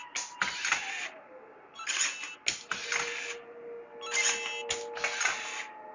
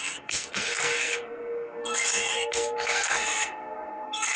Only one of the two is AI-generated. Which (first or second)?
second